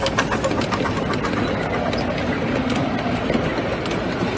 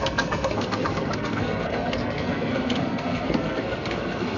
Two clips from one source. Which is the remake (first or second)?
second